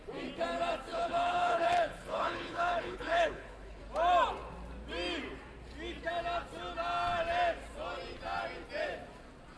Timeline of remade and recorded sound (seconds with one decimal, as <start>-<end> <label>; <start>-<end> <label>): 0.0-0.9 recorded; 0.9-3.8 remade; 3.8-9.6 recorded